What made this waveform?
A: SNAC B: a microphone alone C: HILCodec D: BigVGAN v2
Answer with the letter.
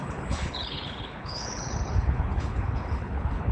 C